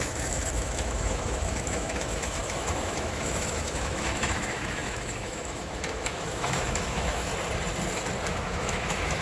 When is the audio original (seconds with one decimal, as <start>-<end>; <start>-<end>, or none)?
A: 7.3-8.3